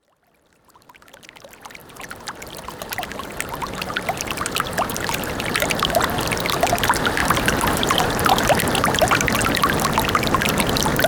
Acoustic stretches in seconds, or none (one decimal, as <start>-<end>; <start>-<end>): 0.0-1.8; 5.7-7.2; 8.4-11.1